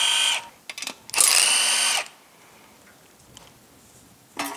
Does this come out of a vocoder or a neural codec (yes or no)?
no